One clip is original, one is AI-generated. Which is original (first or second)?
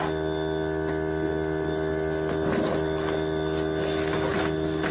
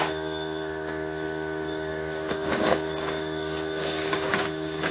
first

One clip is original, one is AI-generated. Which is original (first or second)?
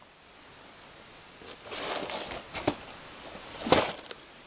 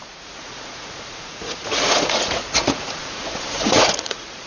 first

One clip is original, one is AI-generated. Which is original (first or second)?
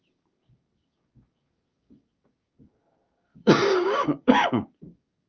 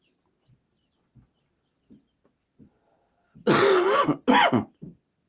second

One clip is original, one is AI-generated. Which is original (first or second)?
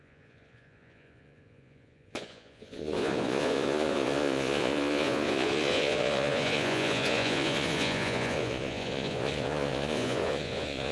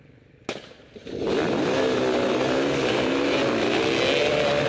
second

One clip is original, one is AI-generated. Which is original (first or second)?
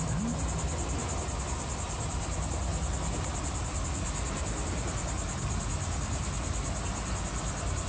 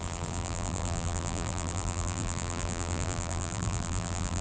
first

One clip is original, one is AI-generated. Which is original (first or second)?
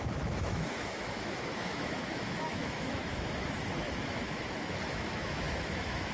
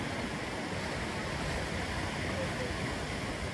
second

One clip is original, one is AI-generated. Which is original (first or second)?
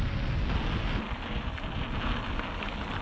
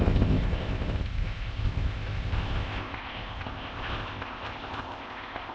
first